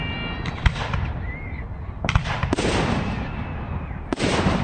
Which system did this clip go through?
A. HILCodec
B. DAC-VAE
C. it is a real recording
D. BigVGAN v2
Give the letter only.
C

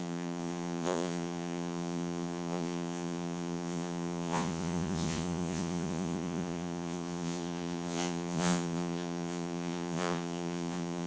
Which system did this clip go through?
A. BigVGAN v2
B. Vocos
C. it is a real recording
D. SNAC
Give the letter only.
B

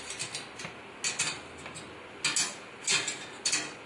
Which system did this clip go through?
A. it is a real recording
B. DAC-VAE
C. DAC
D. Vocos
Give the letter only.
A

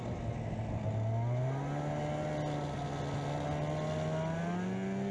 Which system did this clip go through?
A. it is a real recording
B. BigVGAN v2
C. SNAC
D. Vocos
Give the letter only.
A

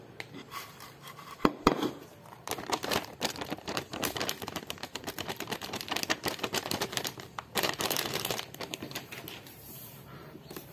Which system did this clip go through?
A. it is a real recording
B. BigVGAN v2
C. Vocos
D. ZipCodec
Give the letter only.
B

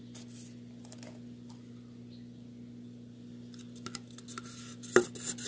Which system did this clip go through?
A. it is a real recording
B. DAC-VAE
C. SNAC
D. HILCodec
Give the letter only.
A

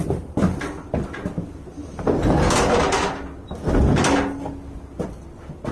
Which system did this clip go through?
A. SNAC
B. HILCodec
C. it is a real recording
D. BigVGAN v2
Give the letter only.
C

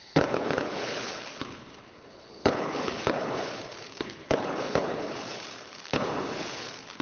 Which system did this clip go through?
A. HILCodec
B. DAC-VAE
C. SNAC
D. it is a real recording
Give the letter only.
A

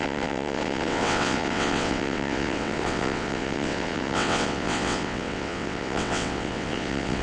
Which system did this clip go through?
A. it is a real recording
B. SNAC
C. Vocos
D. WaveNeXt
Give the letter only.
D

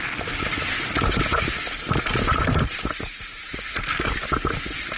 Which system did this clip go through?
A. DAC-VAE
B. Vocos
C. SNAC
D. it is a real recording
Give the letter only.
D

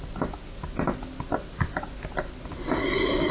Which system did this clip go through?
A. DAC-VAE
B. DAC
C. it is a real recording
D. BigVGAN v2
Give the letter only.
C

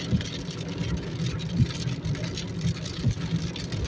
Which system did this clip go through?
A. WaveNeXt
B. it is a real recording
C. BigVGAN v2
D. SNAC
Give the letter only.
B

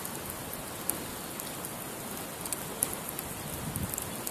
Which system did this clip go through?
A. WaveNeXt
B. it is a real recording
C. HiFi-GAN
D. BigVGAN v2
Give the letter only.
B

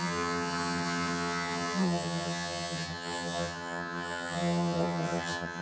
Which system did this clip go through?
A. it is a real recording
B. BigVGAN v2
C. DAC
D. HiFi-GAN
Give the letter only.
D